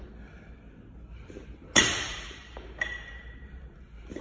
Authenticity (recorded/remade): recorded